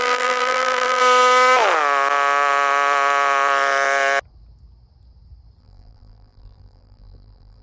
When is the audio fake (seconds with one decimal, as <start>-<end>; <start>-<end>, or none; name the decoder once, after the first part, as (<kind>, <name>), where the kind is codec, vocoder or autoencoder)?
0.0-1.0 (vocoder, BigVGAN v2); 5.6-7.6